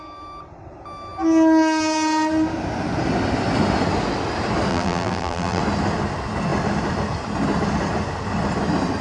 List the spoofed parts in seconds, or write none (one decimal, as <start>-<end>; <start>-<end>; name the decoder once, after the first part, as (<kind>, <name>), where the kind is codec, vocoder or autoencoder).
4.7-5.6 (vocoder, BigVGAN v2)